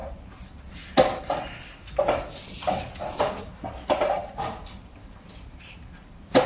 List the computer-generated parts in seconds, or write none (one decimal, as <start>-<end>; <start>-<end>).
3.2-6.5